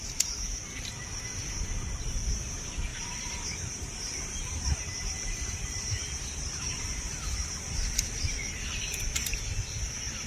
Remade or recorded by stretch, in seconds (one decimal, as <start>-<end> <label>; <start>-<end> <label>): 0.0-2.9 recorded; 2.9-7.0 remade; 7.0-10.3 recorded